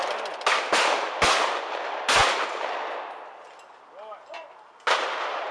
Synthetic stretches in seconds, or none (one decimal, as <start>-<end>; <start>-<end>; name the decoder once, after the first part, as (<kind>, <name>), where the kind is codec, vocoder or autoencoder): none